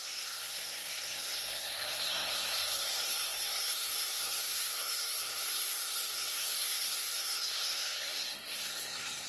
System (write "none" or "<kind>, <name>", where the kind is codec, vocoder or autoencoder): codec, SNAC